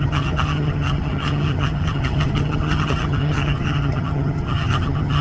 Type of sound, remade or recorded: remade